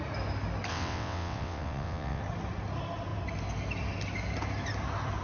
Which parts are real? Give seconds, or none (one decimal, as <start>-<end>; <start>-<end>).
0.0-0.7; 2.2-5.2